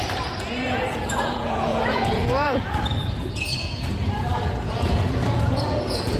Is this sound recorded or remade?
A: remade